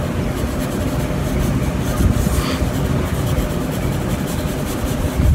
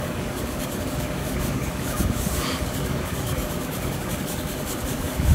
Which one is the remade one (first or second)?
second